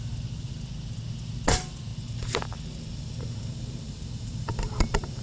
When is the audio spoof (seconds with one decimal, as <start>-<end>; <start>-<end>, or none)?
1.9-5.2